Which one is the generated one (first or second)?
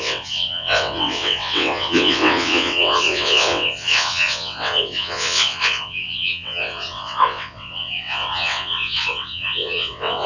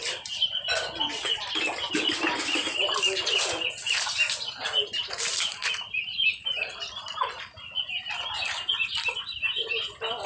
first